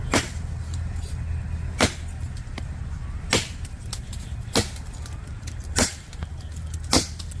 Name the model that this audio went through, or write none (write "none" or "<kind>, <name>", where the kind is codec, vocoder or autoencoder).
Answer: none